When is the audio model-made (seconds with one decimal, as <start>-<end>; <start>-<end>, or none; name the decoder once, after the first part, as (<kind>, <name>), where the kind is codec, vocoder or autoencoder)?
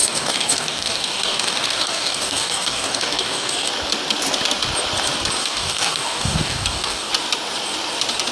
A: 0.0-3.7 (codec, DAC); 5.4-7.1